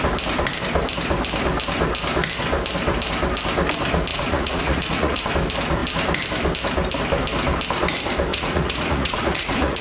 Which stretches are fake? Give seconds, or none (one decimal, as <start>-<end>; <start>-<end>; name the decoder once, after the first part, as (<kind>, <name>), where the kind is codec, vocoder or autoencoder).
4.1-5.3 (vocoder, Vocos); 8.3-9.8